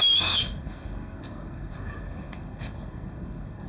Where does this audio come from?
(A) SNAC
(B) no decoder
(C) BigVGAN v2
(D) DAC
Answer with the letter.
A